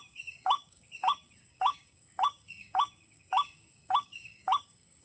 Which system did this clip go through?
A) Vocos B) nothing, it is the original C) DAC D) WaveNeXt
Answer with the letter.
C